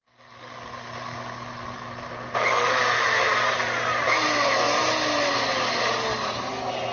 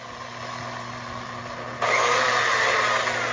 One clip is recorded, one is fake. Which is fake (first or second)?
first